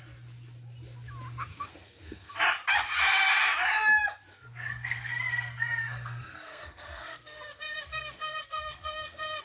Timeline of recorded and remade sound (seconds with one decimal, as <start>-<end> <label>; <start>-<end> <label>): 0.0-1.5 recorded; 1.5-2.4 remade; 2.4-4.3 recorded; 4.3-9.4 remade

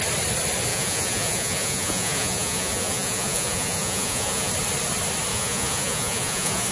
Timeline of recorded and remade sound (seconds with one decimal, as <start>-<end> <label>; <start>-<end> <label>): 0.0-0.7 recorded; 0.7-4.5 remade; 4.5-5.3 recorded; 5.3-6.7 remade

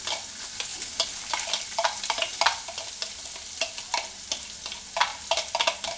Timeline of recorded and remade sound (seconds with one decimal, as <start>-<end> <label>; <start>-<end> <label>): 0.0-6.0 recorded

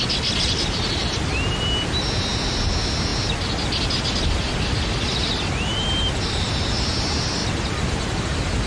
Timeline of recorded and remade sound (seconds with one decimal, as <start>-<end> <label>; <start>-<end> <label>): 0.0-8.7 recorded